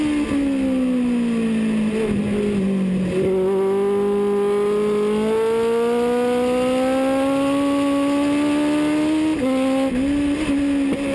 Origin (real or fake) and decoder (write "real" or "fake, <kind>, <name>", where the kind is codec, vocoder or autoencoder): real